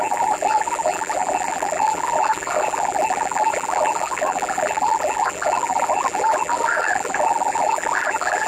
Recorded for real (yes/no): no